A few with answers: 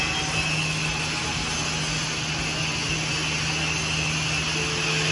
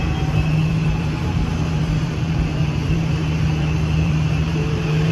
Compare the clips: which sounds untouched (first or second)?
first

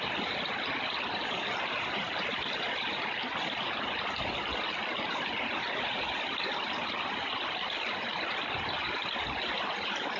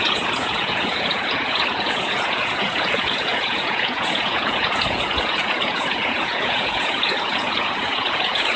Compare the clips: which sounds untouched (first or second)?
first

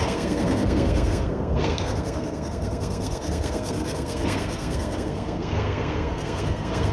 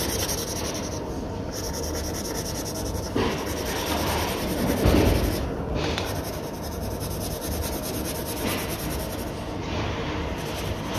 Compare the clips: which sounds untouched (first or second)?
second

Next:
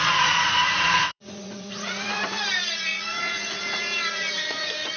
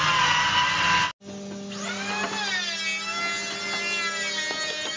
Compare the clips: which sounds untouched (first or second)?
second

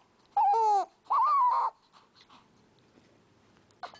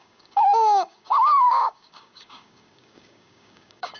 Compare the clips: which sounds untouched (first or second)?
first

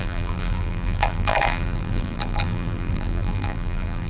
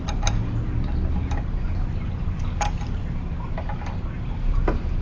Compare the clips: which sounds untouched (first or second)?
second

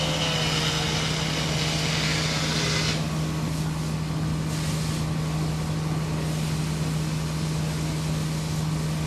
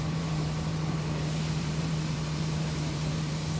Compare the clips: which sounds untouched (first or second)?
first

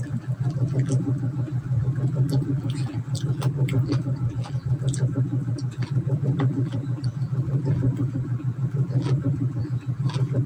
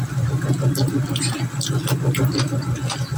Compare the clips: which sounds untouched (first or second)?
second